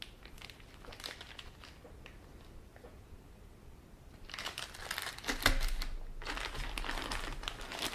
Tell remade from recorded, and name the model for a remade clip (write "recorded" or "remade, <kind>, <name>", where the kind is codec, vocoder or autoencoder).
recorded